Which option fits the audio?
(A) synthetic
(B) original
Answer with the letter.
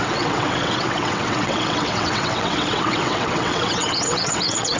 A